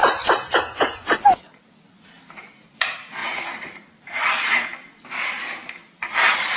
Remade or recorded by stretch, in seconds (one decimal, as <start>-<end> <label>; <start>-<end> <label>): 0.0-6.6 recorded

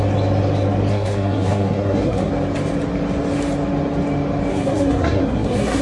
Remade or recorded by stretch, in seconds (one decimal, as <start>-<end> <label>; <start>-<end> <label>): 0.0-0.9 recorded; 0.9-2.3 remade; 2.3-4.5 recorded; 4.5-5.8 remade